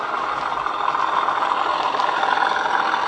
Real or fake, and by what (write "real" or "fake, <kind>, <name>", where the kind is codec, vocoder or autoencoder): real